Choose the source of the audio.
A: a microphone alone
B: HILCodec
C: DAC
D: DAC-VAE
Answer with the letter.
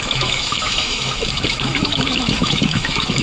D